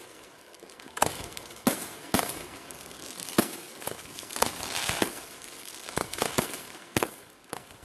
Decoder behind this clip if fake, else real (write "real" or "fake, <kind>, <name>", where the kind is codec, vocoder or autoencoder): fake, codec, SNAC